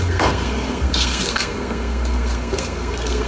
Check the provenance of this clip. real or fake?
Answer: fake